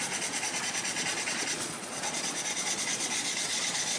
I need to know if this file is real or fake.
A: fake